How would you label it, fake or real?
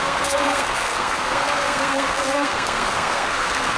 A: fake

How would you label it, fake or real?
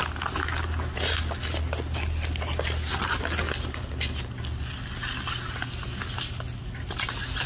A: real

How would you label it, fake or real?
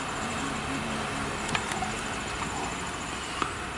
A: real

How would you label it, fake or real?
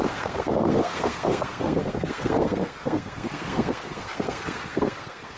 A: fake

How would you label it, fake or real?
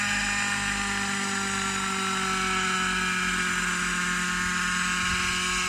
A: real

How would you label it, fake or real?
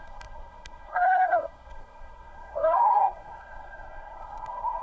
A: fake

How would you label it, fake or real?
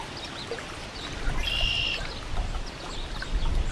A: real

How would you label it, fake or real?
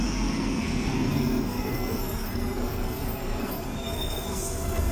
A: fake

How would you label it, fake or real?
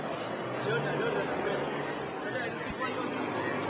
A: real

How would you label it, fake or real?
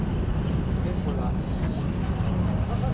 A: real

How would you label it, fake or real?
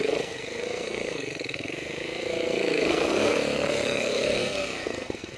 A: fake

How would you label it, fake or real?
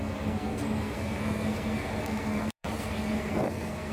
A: fake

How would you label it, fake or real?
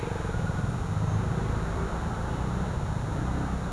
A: real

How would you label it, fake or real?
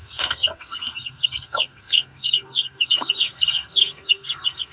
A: fake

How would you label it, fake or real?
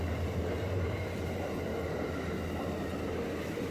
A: real